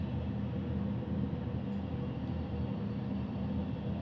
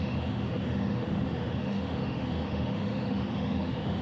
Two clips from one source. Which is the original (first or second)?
first